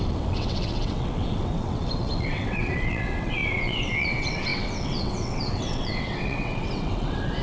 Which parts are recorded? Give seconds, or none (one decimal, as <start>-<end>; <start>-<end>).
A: none